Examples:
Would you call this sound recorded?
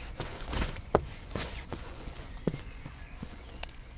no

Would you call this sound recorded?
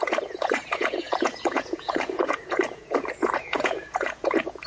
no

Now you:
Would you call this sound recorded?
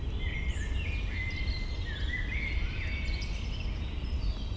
yes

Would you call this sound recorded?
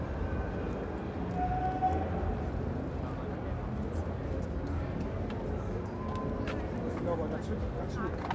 yes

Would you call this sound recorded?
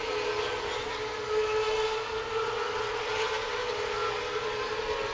yes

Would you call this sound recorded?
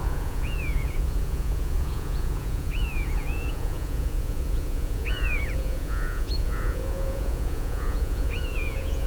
no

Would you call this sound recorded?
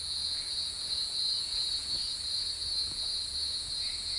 no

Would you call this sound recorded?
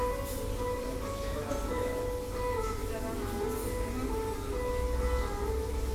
yes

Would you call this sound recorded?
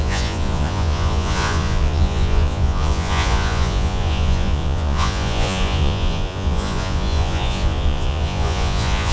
no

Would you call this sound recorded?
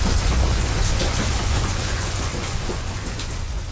no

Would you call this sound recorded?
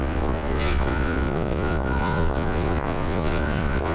no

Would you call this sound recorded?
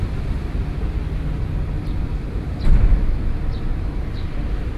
yes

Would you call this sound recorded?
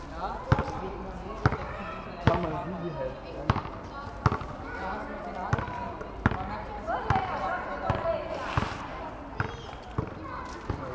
yes